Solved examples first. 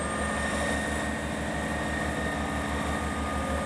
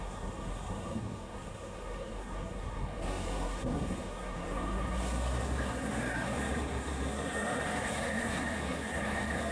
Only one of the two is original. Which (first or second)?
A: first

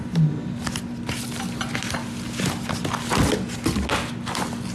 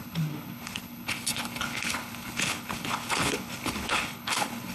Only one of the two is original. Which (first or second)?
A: first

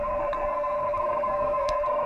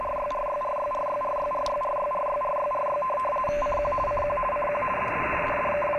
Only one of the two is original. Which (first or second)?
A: second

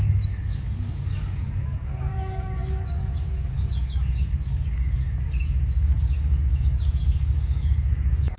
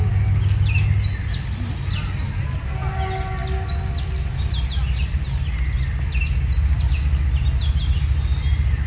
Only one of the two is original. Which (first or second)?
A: second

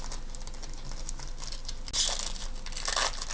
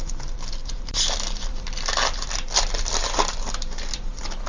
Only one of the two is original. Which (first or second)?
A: first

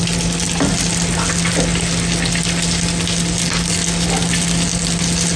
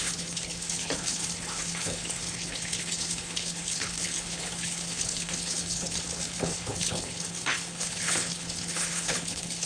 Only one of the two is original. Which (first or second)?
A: first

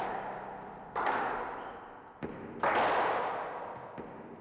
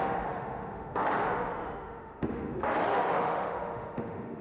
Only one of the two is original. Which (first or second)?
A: first